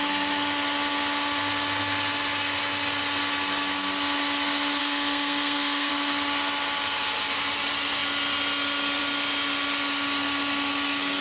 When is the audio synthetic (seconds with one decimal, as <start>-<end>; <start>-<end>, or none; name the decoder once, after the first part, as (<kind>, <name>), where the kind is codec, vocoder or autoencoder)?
4.8-5.9 (codec, SNAC)